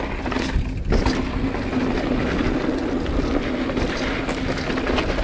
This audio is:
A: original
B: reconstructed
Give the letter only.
A